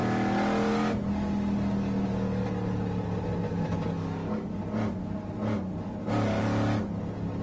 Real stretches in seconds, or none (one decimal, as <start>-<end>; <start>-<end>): 0.0-4.0; 4.6-7.4